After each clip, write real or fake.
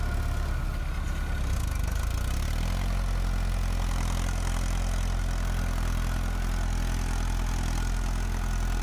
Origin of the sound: real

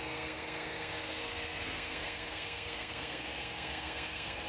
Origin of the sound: fake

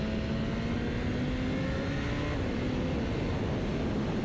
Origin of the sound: real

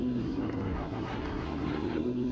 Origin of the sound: fake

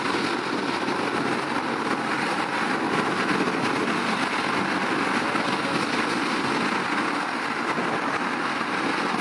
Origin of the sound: real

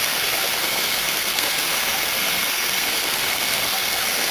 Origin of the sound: fake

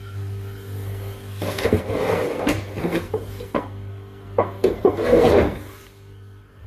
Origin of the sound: fake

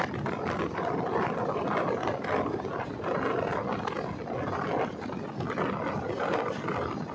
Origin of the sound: real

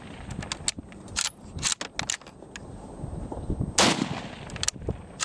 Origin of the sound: real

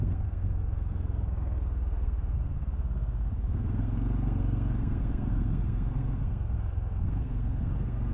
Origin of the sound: fake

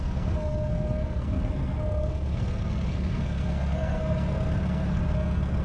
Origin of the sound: fake